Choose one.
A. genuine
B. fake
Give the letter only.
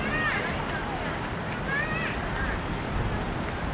A